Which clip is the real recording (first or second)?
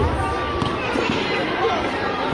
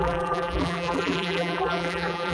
first